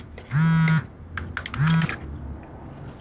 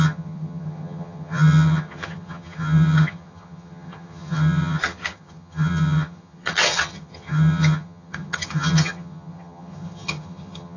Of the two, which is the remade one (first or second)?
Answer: second